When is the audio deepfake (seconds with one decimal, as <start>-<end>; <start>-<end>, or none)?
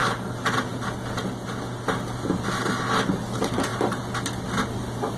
3.1-3.7; 4.6-5.2